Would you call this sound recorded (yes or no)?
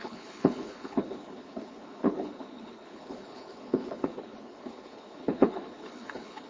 no